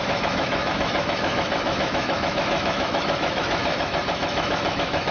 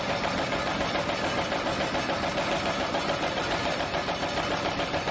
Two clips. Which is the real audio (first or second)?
second